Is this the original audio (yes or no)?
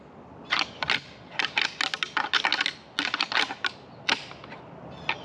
yes